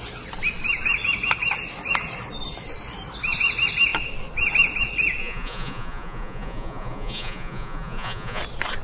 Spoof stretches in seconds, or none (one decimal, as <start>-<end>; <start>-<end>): 5.2-8.4